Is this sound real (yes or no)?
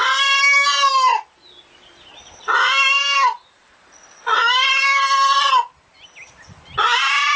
yes